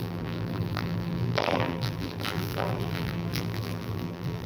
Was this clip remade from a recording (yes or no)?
yes